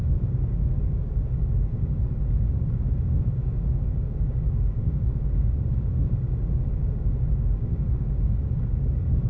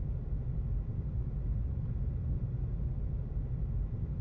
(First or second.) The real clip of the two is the second